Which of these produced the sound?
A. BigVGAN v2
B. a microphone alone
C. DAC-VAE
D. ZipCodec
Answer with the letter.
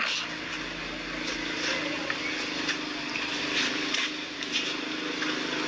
B